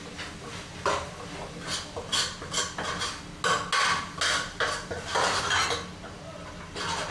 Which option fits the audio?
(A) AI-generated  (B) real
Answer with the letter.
B